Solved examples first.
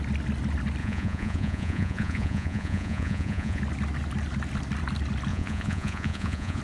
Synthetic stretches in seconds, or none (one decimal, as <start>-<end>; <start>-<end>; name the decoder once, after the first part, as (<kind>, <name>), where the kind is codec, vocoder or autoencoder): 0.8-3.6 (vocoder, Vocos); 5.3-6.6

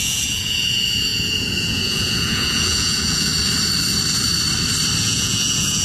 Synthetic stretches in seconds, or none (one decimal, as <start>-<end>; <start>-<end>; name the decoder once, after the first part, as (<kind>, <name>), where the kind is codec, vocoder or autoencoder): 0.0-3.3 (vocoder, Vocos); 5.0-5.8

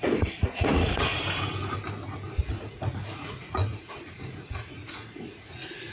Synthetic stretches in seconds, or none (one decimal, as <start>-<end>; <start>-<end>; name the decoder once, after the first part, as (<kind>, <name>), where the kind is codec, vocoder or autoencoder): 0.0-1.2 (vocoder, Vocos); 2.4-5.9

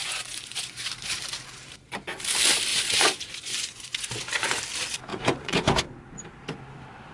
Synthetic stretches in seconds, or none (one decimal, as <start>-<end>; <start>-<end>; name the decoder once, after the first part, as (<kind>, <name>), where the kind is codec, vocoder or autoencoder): 0.0-0.9 (vocoder, Vocos); 2.7-4.6; 5.1-5.8

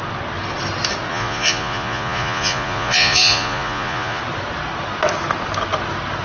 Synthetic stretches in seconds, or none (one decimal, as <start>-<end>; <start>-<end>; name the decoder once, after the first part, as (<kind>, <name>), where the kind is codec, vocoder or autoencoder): 1.1-4.2 (vocoder, Vocos)

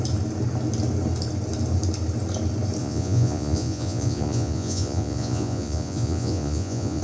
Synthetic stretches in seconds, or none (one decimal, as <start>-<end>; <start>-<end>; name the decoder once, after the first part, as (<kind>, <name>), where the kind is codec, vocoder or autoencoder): 2.8-7.0 (vocoder, Vocos)

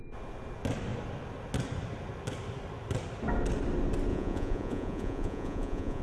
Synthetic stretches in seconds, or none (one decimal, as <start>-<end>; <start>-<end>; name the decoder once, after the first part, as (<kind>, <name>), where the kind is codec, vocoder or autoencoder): 4.1-6.0 (vocoder, Vocos)

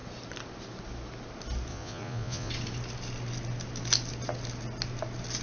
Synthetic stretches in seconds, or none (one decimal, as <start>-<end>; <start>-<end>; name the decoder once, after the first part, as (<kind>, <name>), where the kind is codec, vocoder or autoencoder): 1.7-2.5 (vocoder, Vocos)